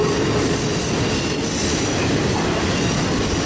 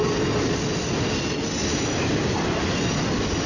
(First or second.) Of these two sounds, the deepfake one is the first